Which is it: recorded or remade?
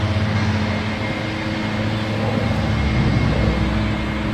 recorded